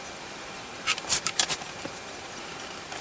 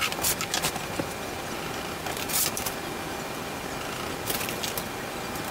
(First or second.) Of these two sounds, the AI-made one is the first